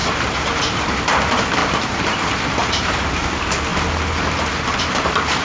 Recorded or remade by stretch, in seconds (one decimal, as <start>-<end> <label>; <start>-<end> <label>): 0.0-0.6 remade; 0.6-1.6 recorded; 1.6-2.2 remade; 2.2-2.6 recorded; 2.6-3.2 remade; 3.2-5.4 recorded